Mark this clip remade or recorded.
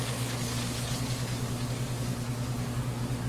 remade